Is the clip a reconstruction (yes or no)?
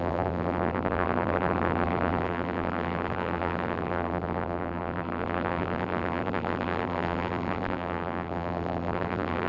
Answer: yes